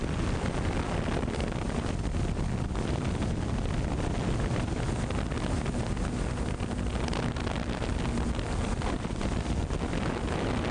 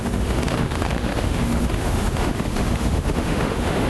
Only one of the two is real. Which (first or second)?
first